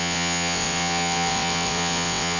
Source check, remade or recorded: remade